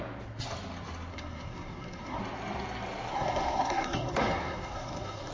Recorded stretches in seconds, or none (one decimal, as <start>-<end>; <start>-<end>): 0.0-1.1; 2.2-3.1

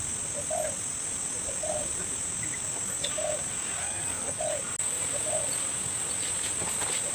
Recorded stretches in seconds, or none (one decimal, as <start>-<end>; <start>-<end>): 0.0-3.8; 4.4-7.1